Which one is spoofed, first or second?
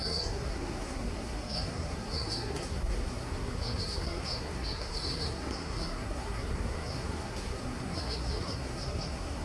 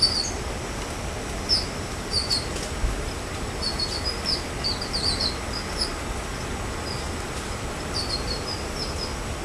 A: first